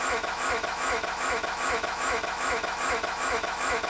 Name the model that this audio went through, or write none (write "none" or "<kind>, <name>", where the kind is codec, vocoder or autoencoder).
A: autoencoder, DAC-VAE